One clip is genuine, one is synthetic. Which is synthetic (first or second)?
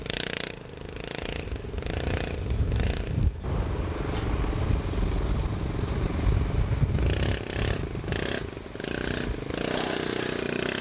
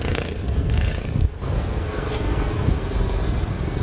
second